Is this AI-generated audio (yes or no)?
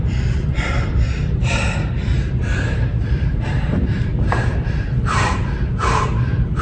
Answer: yes